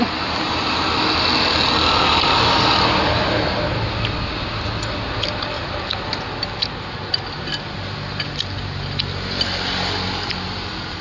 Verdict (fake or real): real